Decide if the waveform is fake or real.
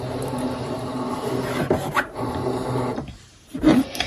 fake